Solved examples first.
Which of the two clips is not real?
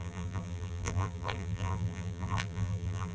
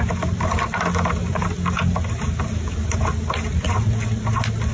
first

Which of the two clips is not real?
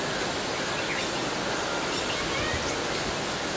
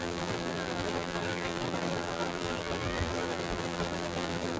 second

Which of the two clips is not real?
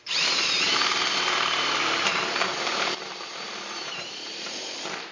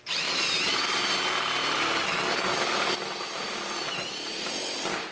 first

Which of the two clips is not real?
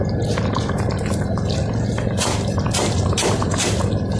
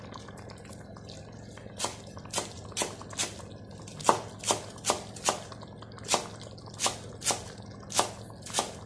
first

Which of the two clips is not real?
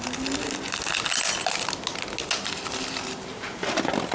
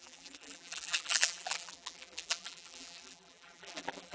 second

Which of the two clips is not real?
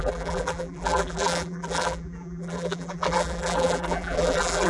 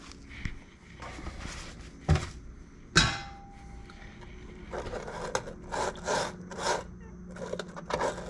first